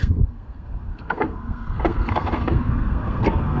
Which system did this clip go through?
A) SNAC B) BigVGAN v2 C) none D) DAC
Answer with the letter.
A